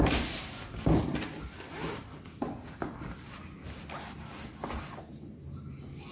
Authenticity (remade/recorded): recorded